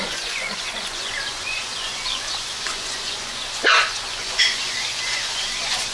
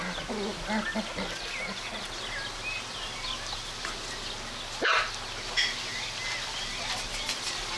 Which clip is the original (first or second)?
second